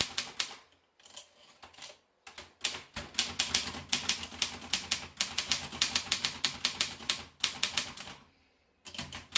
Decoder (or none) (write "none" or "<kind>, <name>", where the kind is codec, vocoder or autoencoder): none